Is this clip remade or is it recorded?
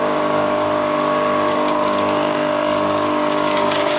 remade